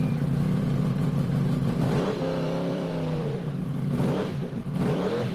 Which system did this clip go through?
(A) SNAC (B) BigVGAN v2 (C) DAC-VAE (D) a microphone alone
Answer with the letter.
B